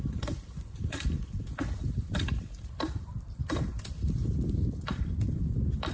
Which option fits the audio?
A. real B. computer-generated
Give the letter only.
B